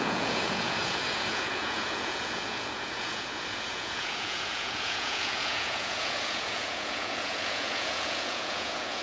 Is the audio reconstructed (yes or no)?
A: yes